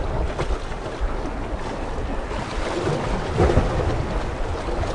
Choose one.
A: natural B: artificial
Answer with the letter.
A